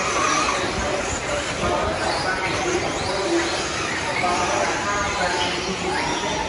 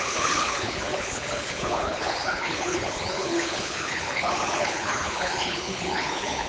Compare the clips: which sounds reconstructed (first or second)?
second